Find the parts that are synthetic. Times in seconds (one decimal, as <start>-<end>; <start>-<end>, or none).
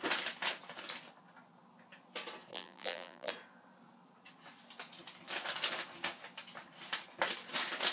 2.5-3.3